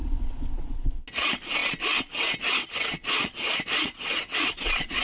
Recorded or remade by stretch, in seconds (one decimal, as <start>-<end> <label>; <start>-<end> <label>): 0.0-0.9 remade; 0.9-2.9 recorded; 2.9-5.0 remade